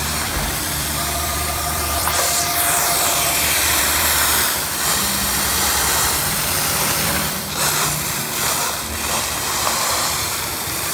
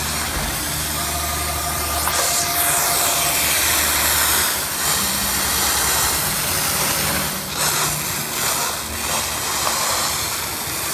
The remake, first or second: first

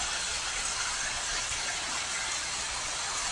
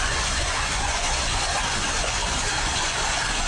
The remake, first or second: second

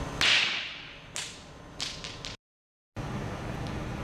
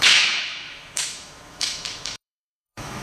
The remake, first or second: second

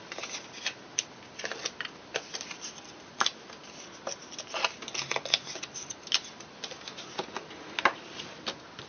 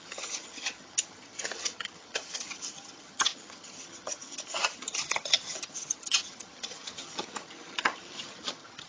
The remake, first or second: second